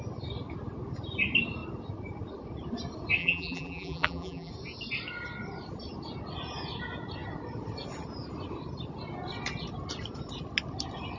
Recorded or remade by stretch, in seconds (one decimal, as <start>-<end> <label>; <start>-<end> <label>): 0.0-3.2 recorded; 3.2-4.5 remade; 4.5-11.2 recorded